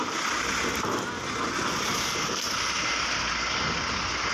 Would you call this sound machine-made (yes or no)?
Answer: no